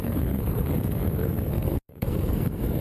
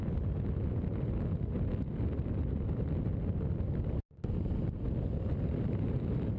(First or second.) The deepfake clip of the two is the first